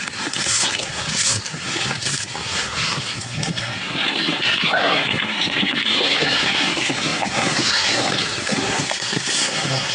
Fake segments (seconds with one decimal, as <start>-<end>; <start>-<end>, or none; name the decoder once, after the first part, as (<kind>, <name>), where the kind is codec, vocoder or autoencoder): 0.0-9.9 (codec, SNAC)